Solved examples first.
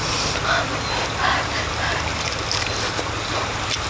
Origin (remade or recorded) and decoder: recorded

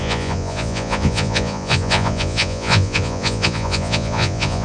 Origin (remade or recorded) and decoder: remade, vocoder, Vocos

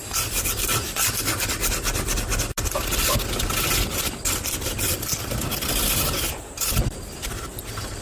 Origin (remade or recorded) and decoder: recorded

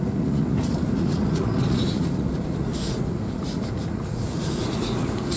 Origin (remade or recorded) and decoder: remade, vocoder, Vocos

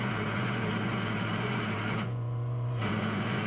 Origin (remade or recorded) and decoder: remade, vocoder, Vocos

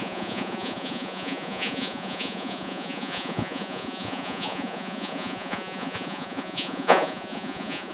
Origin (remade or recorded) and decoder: remade, vocoder, Vocos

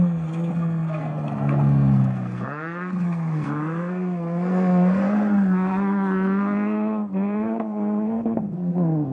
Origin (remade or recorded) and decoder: remade, codec, SNAC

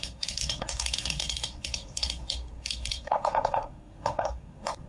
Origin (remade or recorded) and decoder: remade, codec, SNAC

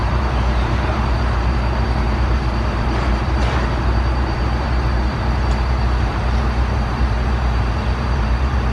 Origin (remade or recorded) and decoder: remade, vocoder, BigVGAN v2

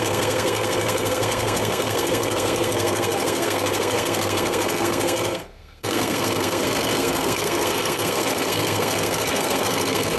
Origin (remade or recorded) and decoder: remade, codec, SNAC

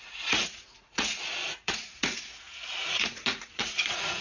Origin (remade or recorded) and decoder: remade, vocoder, Vocos